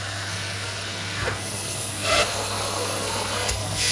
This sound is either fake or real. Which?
fake